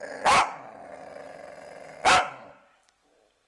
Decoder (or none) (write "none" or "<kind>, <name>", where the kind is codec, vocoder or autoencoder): none